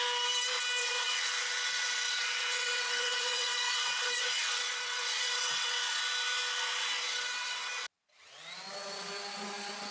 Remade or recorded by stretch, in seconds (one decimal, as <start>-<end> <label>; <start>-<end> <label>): 0.0-0.8 recorded; 0.8-6.0 remade; 6.0-7.1 recorded; 7.1-7.7 remade; 7.7-9.9 recorded